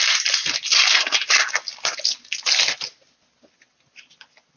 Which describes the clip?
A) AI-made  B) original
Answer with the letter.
B